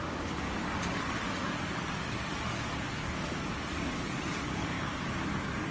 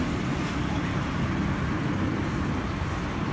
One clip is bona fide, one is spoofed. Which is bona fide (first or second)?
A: second